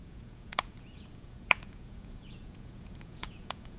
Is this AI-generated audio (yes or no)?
yes